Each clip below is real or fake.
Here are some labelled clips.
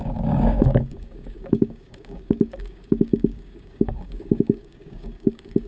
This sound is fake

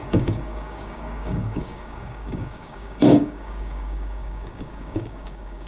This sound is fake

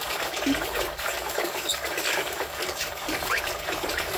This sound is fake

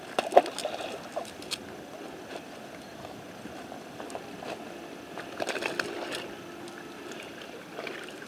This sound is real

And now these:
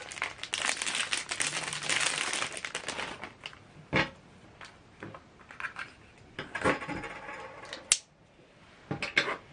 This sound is real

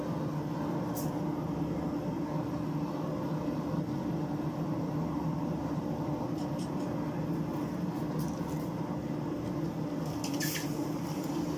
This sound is real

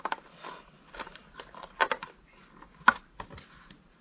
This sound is real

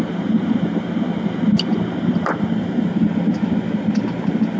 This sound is real